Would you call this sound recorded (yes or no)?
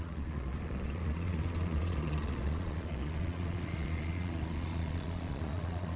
no